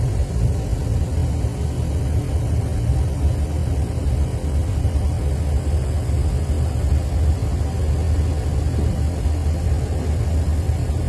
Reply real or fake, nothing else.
real